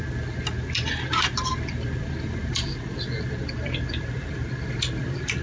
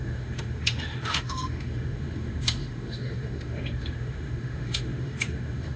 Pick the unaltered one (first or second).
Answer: first